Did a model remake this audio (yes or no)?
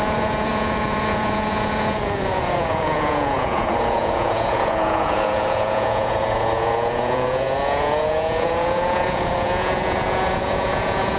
yes